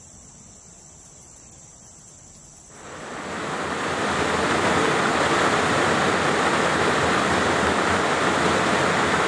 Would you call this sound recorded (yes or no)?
yes